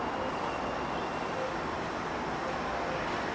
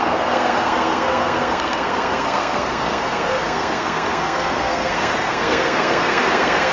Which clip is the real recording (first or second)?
first